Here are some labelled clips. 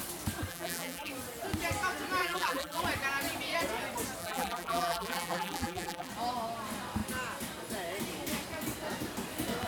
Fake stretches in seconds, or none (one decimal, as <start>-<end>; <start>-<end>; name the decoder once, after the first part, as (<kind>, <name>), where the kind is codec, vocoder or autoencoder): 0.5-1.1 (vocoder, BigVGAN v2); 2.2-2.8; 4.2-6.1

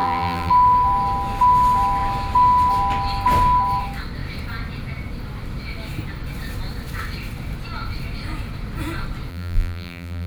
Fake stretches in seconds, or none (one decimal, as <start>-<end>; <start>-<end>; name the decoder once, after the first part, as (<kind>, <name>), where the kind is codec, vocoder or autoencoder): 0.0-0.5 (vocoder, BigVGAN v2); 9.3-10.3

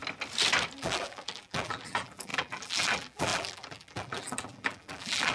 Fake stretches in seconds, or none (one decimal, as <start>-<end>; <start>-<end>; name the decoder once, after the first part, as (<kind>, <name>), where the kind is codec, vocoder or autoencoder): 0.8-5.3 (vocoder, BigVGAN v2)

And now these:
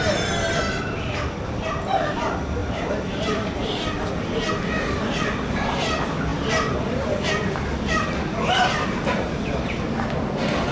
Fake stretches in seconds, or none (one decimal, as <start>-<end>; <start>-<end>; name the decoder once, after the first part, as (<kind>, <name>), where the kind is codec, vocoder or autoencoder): 0.0-6.3 (vocoder, BigVGAN v2); 7.3-10.7